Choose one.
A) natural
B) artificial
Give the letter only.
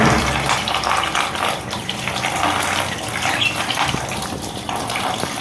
B